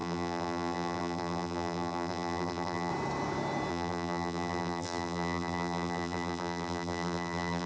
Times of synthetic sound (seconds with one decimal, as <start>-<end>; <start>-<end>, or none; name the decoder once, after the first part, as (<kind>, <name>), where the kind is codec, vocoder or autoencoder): 0.0-2.9 (vocoder, BigVGAN v2); 3.7-7.7

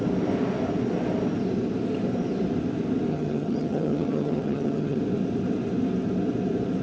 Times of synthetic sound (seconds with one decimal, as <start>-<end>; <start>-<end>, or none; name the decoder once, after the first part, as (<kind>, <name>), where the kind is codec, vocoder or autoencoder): 3.1-5.0 (vocoder, HiFi-GAN)

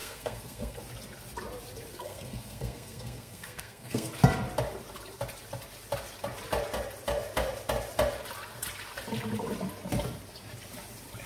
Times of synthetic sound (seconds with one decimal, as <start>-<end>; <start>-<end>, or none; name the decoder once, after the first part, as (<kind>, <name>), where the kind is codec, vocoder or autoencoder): 0.0-0.8 (codec, SNAC); 1.9-4.1